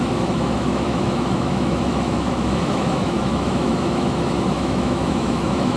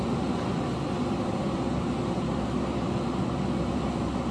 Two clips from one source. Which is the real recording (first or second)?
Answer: second